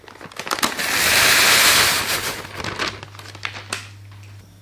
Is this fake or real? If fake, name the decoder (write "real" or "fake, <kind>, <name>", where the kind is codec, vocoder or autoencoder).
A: real